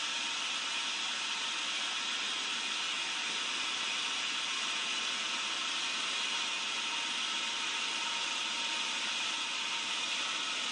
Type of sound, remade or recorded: recorded